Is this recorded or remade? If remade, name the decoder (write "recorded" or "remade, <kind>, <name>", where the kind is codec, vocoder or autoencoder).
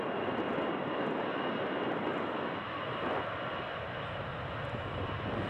recorded